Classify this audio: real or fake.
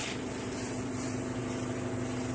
real